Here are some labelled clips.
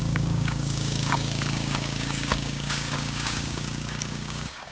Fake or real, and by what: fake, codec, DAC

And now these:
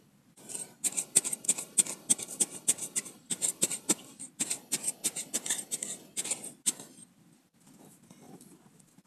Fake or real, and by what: real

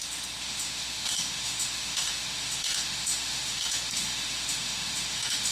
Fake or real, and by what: fake, autoencoder, DAC-VAE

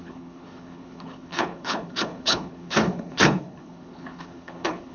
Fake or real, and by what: fake, codec, HILCodec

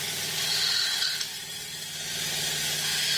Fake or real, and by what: real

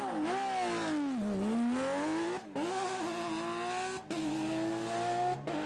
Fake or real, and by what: real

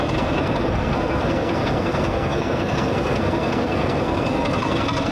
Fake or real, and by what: fake, codec, SNAC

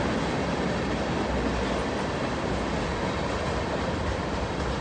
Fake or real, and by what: real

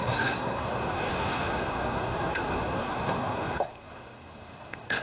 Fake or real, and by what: fake, codec, SNAC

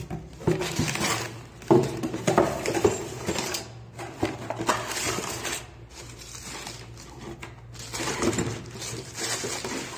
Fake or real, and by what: real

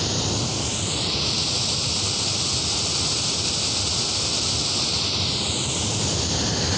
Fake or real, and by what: real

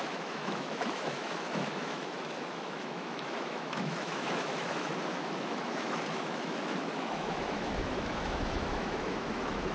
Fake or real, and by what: fake, autoencoder, DAC-VAE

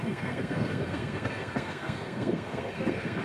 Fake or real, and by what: fake, codec, SNAC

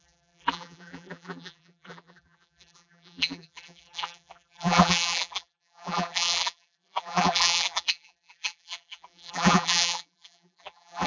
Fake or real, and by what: fake, vocoder, BigVGAN v2